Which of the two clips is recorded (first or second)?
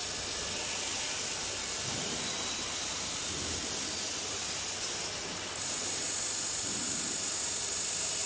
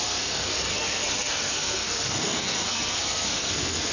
first